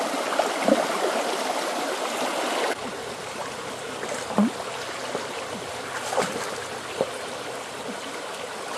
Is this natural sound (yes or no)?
yes